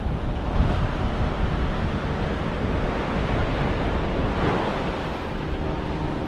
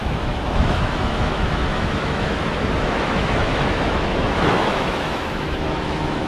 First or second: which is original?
first